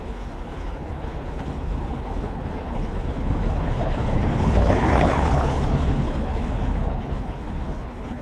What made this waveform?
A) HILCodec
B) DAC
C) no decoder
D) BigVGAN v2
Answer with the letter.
A